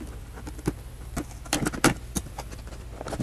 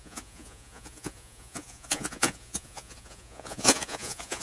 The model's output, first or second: second